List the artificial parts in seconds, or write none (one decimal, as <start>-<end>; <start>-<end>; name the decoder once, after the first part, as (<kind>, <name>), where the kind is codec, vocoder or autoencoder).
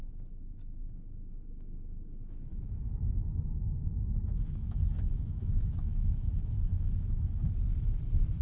2.5-6.3 (autoencoder, DAC-VAE); 6.7-7.5